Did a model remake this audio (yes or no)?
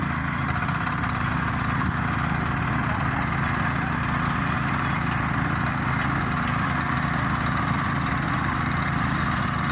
no